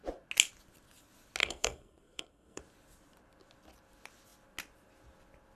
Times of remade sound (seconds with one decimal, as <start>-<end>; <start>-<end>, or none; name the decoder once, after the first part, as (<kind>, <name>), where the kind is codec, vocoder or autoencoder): 1.4-2.6 (codec, SNAC)